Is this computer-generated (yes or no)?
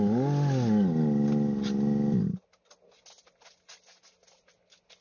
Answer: no